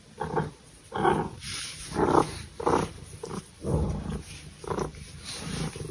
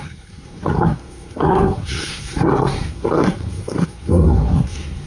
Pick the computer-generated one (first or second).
second